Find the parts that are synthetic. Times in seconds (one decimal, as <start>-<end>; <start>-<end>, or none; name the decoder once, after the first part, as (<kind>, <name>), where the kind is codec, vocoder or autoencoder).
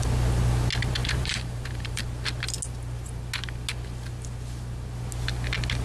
1.0-2.0 (vocoder, BigVGAN v2)